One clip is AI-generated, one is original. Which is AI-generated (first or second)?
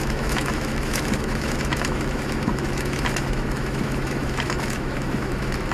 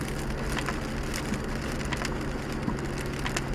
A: first